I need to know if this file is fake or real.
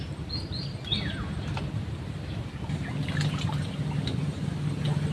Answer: real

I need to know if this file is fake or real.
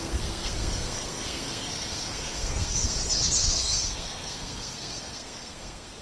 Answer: fake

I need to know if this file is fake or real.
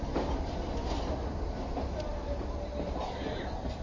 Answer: real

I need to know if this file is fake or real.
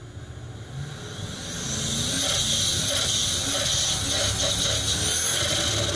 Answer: real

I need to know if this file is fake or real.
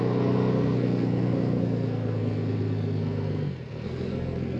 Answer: fake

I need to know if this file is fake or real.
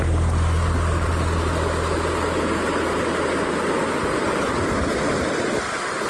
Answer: real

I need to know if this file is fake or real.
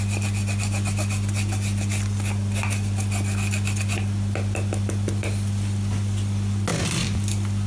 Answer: real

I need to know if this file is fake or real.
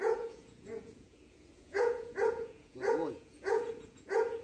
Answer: fake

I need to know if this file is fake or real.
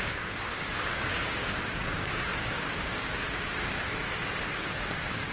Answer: fake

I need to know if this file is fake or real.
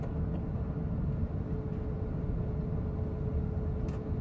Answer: real